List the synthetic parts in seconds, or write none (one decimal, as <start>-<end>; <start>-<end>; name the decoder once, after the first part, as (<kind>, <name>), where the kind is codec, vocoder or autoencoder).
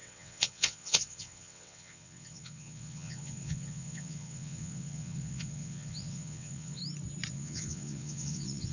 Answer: 0.0-6.8 (vocoder, WaveNeXt); 7.3-8.7